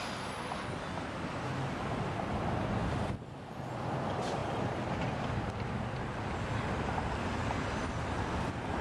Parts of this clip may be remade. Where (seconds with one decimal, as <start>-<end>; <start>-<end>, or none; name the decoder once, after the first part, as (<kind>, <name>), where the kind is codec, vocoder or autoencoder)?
none